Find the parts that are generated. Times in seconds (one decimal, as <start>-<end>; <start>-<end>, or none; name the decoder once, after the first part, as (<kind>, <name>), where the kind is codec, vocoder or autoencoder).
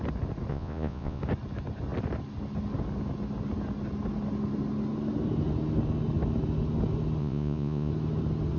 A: 0.5-1.2 (vocoder, Vocos); 7.2-7.9